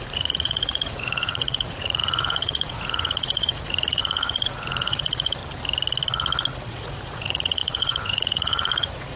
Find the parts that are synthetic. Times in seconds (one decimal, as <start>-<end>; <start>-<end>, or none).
0.0-5.4; 6.5-9.2